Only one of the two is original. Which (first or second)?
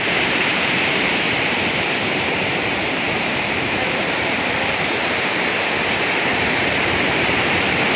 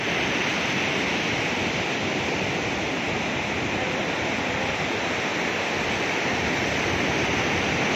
second